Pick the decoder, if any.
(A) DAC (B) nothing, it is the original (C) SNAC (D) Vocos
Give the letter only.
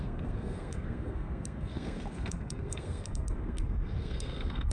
C